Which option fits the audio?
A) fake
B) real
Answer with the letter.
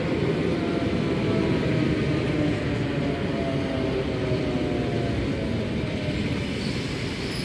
B